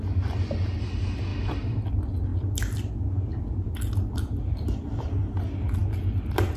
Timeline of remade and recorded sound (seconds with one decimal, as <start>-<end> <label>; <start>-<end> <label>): 0.0-1.3 recorded; 1.3-1.9 remade; 1.9-2.3 recorded; 2.3-2.9 remade; 2.9-3.3 recorded; 3.3-5.2 remade; 5.2-5.8 recorded; 5.8-6.6 remade